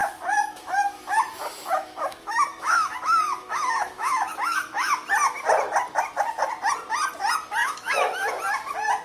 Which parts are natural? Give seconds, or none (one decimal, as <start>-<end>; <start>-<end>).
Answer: 5.1-7.6; 8.3-9.0